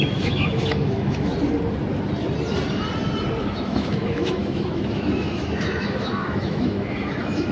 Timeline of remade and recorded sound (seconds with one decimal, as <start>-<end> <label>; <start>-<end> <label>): 0.0-1.3 remade; 1.3-3.4 recorded; 3.4-7.5 remade